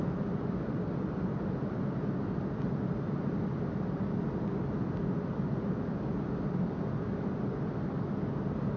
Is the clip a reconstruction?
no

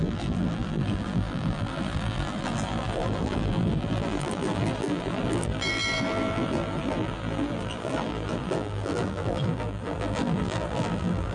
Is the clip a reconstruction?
yes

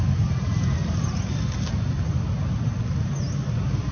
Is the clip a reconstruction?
no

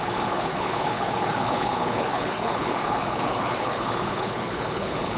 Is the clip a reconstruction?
yes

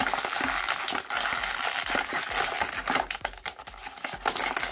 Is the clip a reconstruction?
no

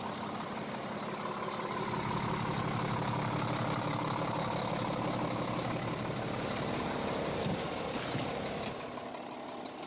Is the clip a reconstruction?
no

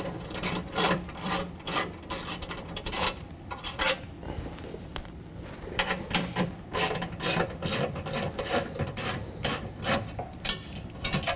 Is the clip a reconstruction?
yes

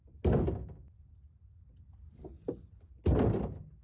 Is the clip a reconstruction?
no